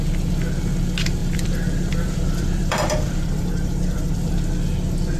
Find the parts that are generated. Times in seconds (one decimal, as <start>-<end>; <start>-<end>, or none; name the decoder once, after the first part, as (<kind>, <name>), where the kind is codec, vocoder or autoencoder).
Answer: 1.2-4.3 (vocoder, BigVGAN v2)